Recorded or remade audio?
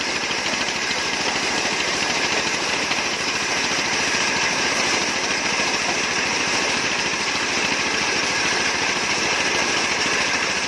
remade